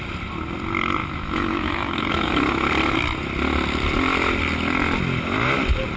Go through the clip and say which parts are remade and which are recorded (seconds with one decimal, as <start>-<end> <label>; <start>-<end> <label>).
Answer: 0.0-1.0 recorded; 1.0-2.7 remade; 2.7-6.0 recorded